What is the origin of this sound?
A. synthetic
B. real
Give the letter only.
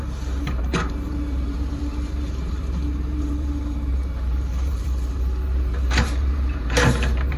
A